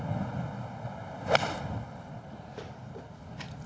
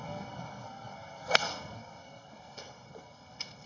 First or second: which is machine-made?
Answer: second